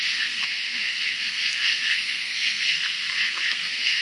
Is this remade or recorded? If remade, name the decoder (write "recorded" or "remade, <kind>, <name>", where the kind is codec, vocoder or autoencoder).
remade, codec, SNAC